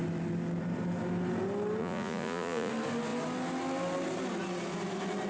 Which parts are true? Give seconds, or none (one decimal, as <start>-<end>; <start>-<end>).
0.0-1.8; 2.7-5.3